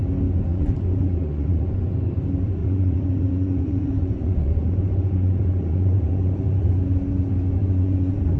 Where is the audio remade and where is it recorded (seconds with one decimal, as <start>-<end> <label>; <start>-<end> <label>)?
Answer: 0.0-0.5 recorded; 0.5-1.9 remade; 1.9-2.6 recorded; 2.6-6.7 remade; 6.7-7.6 recorded; 7.6-8.4 remade